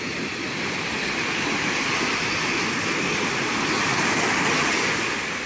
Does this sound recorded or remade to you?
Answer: recorded